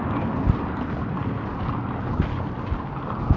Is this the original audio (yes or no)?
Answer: yes